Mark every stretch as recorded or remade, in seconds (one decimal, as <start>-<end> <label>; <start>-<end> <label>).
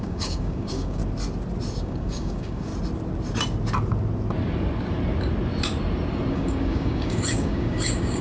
0.0-1.0 remade; 1.0-1.8 recorded; 1.8-2.7 remade; 2.7-6.3 recorded; 6.3-8.2 remade